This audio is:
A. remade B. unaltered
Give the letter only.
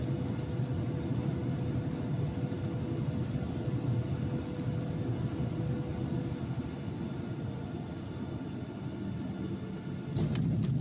B